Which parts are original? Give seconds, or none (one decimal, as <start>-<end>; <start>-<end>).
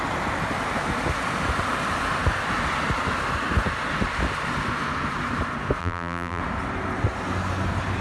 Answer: 0.0-5.8; 6.4-8.0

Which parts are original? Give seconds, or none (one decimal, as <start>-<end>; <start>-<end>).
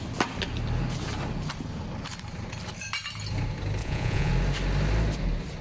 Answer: 0.0-3.8; 4.3-5.6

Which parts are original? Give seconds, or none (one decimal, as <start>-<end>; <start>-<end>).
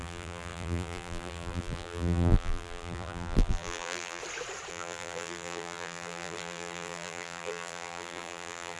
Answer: 4.2-4.7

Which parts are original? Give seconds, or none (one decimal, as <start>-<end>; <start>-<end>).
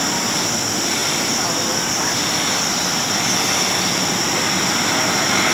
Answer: 0.0-5.5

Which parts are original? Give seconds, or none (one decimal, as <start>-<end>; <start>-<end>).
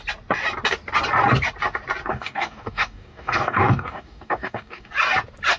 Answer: 0.0-2.1; 4.9-5.6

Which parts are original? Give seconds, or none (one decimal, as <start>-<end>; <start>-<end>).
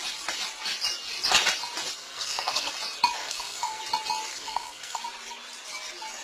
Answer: 0.0-2.0; 2.7-3.2; 3.8-4.3; 5.0-6.2